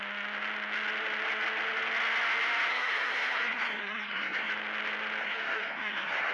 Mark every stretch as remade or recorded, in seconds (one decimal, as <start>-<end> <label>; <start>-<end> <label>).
0.0-2.7 recorded; 2.7-4.5 remade; 4.5-5.2 recorded; 5.2-6.3 remade